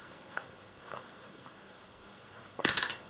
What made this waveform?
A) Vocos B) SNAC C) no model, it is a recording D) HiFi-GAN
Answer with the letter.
B